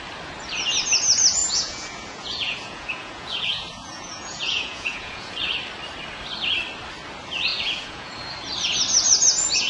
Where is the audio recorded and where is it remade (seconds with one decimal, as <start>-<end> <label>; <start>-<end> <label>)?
0.0-1.4 recorded; 1.4-5.3 remade; 5.3-7.5 recorded; 7.5-8.1 remade; 8.1-9.7 recorded